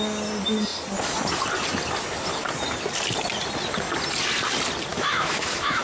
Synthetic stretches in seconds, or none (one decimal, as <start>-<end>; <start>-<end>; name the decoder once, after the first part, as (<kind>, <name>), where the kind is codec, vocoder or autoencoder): 4.9-5.8 (autoencoder, DAC-VAE)